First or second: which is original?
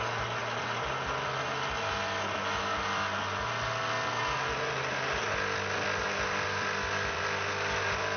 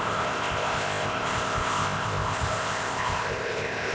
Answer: first